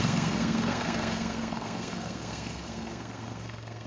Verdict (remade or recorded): remade